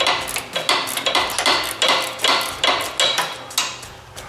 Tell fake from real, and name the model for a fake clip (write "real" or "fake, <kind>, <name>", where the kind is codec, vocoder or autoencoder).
real